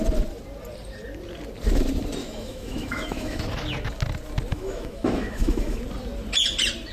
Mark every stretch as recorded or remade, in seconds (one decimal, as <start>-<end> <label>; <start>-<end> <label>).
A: 0.0-2.2 recorded; 2.2-3.4 remade; 3.4-4.5 recorded; 4.5-5.8 remade; 5.8-6.9 recorded